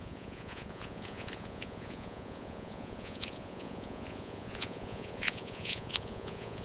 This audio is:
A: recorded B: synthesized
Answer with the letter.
B